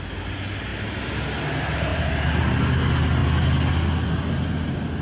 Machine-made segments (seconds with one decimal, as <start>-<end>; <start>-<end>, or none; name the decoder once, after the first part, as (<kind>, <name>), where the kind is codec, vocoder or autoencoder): 1.9-2.8 (vocoder, BigVGAN v2)